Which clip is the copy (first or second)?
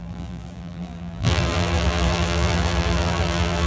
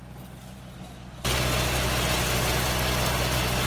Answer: first